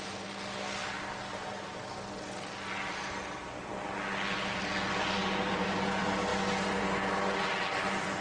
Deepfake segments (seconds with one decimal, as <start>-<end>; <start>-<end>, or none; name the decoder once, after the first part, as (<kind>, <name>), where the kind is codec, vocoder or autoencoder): none